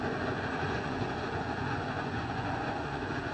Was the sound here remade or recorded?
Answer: remade